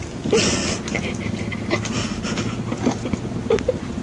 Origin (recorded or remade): recorded